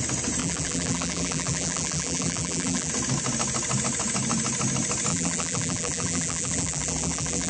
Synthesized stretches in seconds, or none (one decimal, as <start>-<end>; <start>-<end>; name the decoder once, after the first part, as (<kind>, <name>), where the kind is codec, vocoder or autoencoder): 0.4-2.9 (vocoder, BigVGAN v2); 5.1-7.5